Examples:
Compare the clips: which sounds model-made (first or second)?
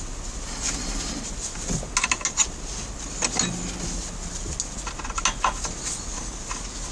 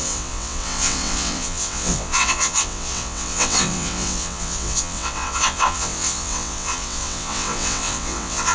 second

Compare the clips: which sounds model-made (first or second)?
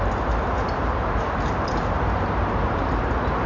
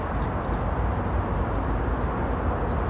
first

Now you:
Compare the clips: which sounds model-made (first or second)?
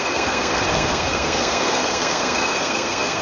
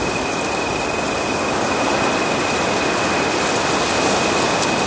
first